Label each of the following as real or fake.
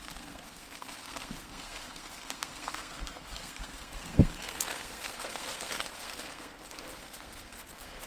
fake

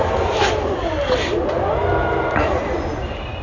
real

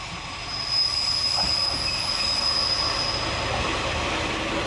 real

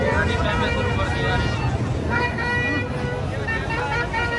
real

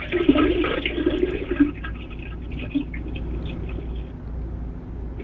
real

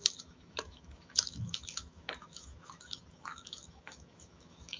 fake